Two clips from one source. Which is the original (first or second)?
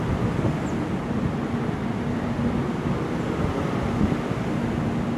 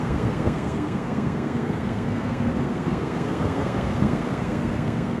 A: first